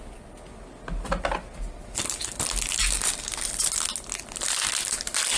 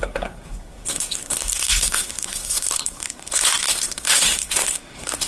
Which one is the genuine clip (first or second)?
first